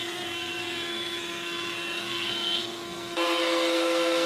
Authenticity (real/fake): fake